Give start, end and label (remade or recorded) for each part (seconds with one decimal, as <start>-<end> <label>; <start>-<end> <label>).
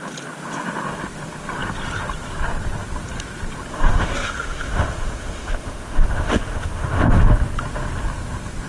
0.0-3.7 recorded; 3.7-7.2 remade; 7.2-8.7 recorded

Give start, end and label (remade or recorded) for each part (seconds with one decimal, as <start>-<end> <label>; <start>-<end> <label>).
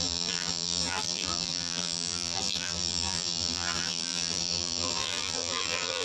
0.0-6.0 remade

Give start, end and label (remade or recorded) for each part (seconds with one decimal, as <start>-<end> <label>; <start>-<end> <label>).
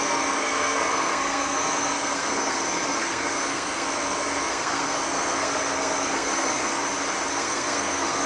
0.0-6.8 remade; 6.8-7.3 recorded; 7.3-8.3 remade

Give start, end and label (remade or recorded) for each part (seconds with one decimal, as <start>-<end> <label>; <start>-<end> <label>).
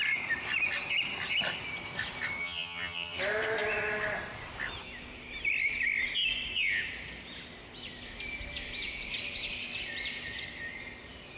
0.0-2.4 recorded; 2.4-3.2 remade; 3.2-11.4 recorded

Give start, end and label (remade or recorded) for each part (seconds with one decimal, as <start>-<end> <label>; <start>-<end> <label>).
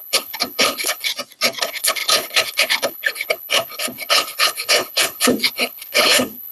0.0-1.1 remade; 1.1-1.6 recorded; 1.6-6.5 remade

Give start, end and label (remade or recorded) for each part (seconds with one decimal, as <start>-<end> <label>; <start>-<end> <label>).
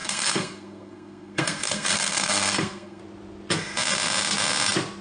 0.0-3.0 remade; 3.0-5.0 recorded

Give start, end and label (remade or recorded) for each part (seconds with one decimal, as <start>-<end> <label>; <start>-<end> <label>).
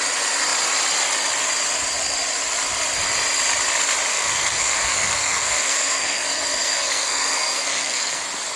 0.0-4.1 recorded; 4.1-8.2 remade; 8.2-8.6 recorded